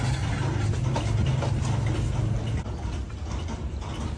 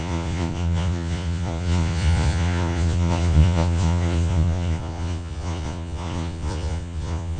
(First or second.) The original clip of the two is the first